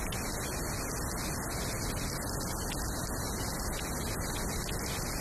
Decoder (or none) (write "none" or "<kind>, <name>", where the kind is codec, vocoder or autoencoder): none